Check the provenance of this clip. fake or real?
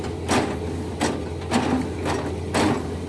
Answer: real